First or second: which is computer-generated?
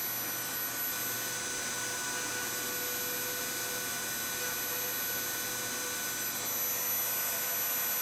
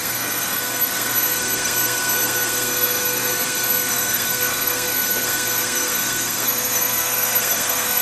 second